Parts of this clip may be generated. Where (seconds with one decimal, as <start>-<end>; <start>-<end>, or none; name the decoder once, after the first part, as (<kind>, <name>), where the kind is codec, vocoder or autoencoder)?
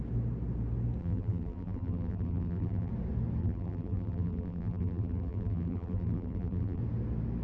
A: 1.0-2.9 (vocoder, BigVGAN v2); 3.4-6.8